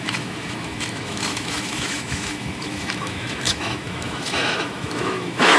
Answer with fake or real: fake